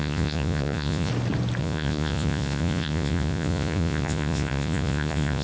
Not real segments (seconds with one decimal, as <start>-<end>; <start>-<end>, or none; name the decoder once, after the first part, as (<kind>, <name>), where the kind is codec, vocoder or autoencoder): 0.0-1.1 (vocoder, Vocos); 1.6-5.4